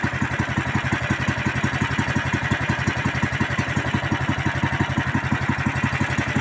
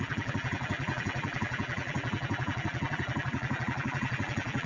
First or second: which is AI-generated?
second